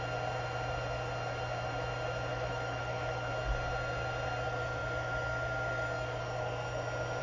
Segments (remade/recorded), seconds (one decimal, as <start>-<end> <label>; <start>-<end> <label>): 0.0-2.3 recorded; 2.3-3.3 remade; 3.3-7.2 recorded